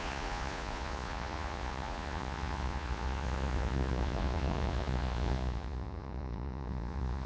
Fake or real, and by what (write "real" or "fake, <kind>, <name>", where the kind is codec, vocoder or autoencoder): fake, vocoder, Vocos